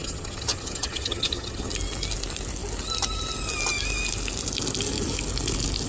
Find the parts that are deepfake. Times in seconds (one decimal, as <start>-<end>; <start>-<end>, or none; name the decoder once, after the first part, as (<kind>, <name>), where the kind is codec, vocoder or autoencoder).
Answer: 0.0-1.7 (vocoder, HiFi-GAN)